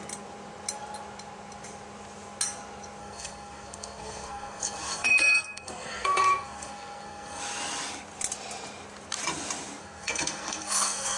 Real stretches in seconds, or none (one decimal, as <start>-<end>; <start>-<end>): 0.0-3.0; 7.4-9.8